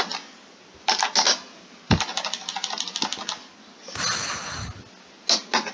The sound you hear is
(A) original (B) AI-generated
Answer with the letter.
A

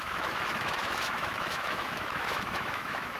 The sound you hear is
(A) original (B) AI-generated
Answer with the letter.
B